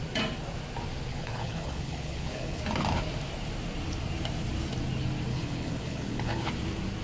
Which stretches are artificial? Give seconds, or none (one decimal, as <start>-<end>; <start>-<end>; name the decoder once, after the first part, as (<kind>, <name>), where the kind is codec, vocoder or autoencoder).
1.1-2.6 (codec, HILCodec); 5.3-6.5